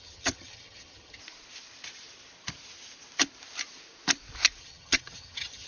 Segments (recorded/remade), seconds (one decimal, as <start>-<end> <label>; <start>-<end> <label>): 0.0-1.2 remade; 1.2-4.6 recorded; 4.6-5.7 remade